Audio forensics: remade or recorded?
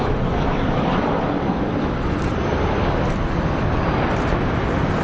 recorded